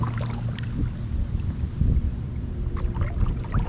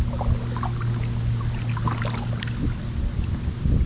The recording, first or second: second